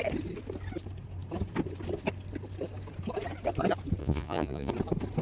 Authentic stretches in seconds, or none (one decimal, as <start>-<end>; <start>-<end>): 0.0-4.0; 4.7-5.2